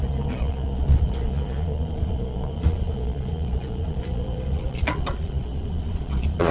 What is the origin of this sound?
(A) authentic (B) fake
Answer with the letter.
B